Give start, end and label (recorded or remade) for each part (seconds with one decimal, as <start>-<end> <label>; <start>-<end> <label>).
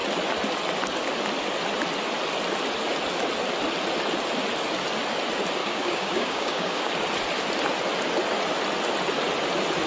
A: 0.0-5.6 recorded; 5.6-6.9 remade; 6.9-9.9 recorded